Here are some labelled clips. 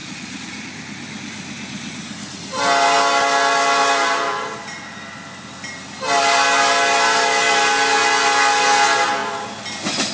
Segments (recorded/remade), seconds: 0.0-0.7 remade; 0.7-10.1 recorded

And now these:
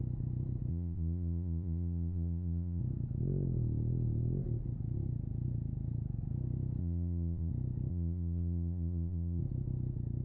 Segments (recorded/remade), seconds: 0.0-0.7 recorded; 0.7-2.8 remade; 2.8-6.8 recorded; 6.8-7.5 remade; 7.5-7.9 recorded; 7.9-9.4 remade; 9.4-10.2 recorded

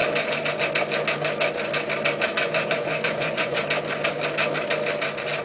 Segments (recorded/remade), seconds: 0.0-2.4 recorded; 2.4-3.6 remade; 3.6-5.4 recorded

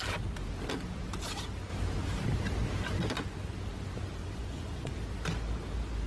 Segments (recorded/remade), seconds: 0.0-4.2 recorded; 4.2-4.9 remade; 4.9-6.1 recorded

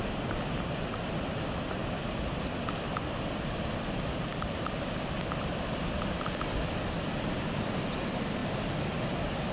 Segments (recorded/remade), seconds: 0.0-9.5 recorded